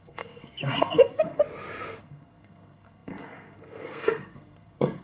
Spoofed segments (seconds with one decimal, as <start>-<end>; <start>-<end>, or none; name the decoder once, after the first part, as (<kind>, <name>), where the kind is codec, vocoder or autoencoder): 0.0-1.4 (codec, SNAC); 2.0-5.0